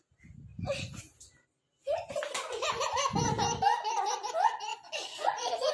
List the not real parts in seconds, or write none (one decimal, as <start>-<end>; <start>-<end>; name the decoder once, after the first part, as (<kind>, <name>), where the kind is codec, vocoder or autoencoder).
4.7-5.7 (vocoder, Vocos)